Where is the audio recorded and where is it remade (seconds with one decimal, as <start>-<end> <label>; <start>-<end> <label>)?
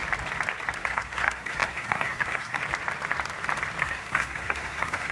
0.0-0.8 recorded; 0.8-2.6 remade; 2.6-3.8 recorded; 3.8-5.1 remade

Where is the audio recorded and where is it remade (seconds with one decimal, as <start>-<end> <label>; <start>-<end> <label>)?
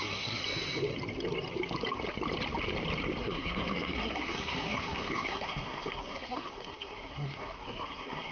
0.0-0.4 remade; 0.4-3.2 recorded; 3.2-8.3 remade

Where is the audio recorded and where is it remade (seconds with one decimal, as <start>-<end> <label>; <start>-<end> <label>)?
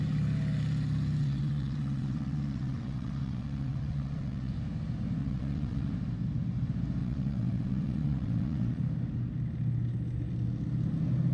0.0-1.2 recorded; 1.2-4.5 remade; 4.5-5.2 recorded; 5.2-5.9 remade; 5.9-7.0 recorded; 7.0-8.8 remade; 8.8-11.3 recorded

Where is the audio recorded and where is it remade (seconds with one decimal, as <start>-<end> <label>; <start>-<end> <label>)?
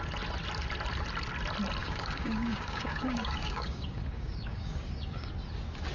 0.0-1.8 recorded; 1.8-5.3 remade; 5.3-5.9 recorded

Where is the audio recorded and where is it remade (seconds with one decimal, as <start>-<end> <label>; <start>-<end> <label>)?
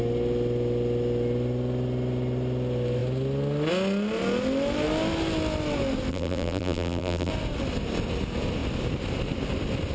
0.0-6.1 recorded; 6.1-7.3 remade; 7.3-9.9 recorded